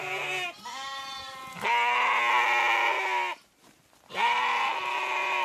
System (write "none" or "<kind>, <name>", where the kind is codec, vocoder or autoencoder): none